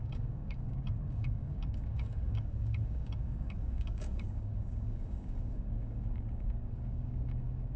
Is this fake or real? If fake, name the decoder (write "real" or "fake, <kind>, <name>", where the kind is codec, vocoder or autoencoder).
fake, codec, DAC